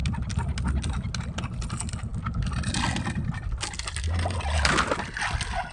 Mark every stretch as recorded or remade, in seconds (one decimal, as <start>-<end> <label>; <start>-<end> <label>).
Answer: 0.0-5.7 recorded